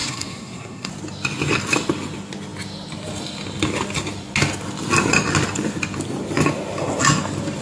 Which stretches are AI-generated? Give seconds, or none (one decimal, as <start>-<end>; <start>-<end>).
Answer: 0.0-0.9